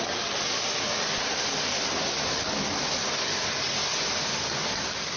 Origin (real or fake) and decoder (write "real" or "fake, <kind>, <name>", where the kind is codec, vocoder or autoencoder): real